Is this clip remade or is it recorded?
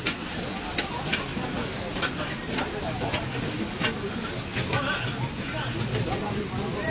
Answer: recorded